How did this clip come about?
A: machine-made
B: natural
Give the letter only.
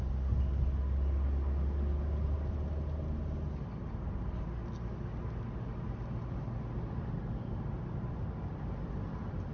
B